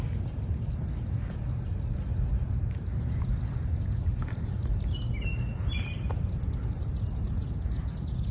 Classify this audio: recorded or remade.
recorded